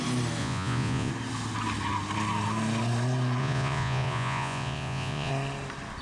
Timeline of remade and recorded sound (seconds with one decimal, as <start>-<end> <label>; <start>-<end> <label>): 0.0-0.4 recorded; 0.4-1.1 remade; 1.1-3.4 recorded; 3.4-5.3 remade; 5.3-6.0 recorded